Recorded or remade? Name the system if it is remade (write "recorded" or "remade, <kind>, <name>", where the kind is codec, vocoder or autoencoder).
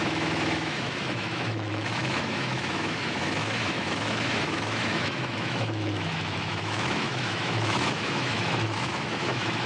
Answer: remade, autoencoder, DAC-VAE